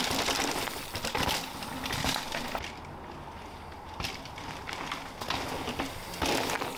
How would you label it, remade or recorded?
recorded